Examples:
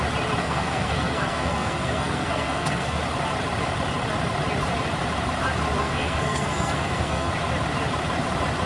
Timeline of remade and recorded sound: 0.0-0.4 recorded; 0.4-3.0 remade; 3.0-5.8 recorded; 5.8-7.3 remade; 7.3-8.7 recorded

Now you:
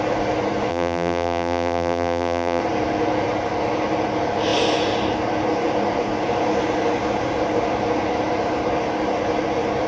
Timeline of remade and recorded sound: 0.0-0.7 recorded; 0.7-2.6 remade; 2.6-9.9 recorded

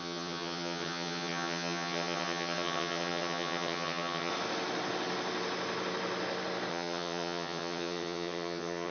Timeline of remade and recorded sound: 0.0-4.3 remade; 4.3-6.7 recorded; 6.7-8.9 remade

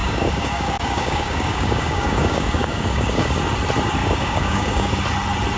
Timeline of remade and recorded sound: 0.0-3.4 remade; 3.4-4.0 recorded; 4.0-4.9 remade; 4.9-5.6 recorded

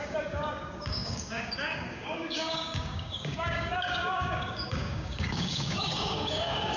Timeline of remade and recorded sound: 0.0-6.8 remade

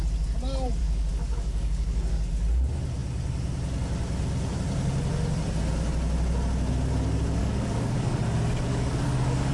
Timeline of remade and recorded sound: 0.0-0.8 recorded; 0.8-2.3 remade; 2.3-7.4 recorded; 7.4-8.2 remade; 8.2-8.7 recorded; 8.7-9.5 remade

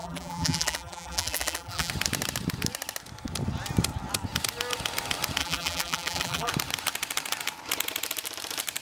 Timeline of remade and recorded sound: 0.0-1.9 remade; 1.9-5.4 recorded; 5.4-6.5 remade; 6.5-8.8 recorded